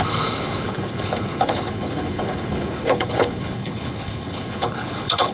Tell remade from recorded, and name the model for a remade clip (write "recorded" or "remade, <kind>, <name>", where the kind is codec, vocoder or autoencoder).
remade, codec, HILCodec